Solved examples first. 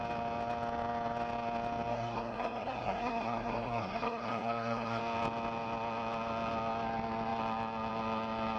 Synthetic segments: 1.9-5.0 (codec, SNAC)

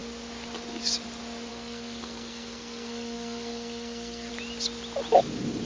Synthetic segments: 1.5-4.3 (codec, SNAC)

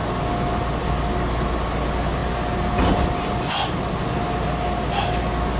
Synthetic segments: none

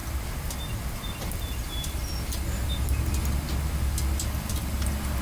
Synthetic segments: none

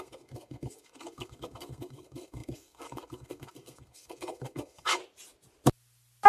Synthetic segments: 0.0-5.0 (codec, SNAC)